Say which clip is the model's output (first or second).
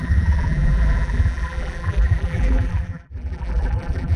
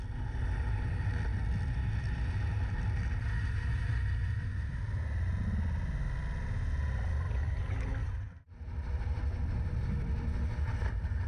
first